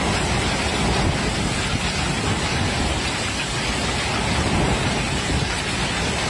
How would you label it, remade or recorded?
recorded